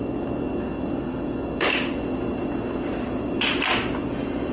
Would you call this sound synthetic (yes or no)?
no